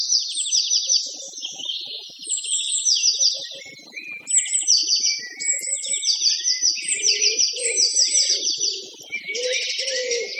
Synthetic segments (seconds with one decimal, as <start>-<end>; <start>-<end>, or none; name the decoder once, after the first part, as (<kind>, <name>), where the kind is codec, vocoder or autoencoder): none